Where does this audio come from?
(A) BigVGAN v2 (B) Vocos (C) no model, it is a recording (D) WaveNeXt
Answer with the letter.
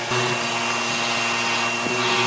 C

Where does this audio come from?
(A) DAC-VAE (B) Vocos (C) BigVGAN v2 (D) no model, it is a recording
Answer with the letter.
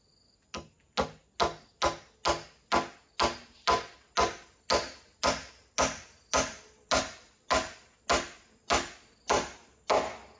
D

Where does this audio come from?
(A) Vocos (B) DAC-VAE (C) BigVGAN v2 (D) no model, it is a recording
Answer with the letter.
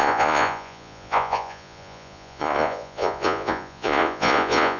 A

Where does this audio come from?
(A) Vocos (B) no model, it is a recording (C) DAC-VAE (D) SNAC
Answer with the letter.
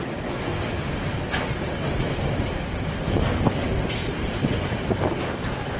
B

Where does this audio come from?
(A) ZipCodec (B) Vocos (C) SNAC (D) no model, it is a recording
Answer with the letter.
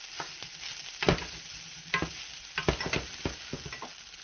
D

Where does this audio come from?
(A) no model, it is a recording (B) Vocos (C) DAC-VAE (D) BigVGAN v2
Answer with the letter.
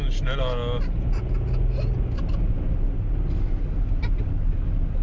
A